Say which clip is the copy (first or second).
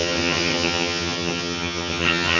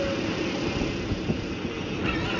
first